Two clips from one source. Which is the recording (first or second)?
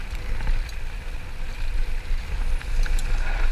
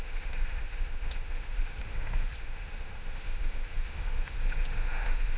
first